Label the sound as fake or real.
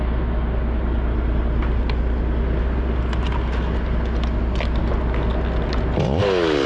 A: real